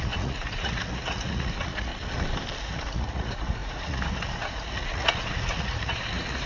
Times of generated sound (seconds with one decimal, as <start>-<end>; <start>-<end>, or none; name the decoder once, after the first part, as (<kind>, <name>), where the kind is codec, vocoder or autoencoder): 0.0-1.9 (vocoder, Vocos); 2.6-6.5